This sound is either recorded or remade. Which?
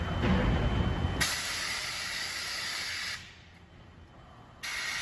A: recorded